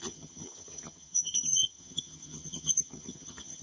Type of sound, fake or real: fake